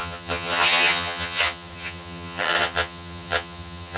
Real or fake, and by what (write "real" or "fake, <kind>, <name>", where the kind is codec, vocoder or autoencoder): fake, vocoder, HiFi-GAN